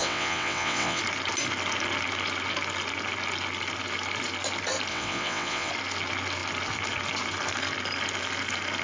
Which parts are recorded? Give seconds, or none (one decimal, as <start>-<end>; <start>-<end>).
1.0-4.9; 5.7-8.8